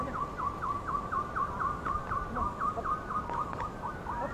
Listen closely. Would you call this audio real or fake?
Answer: real